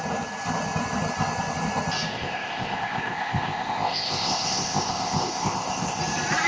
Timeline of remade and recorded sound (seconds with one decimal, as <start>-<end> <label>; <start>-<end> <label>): 0.0-2.1 recorded; 2.1-6.0 remade; 6.0-6.5 recorded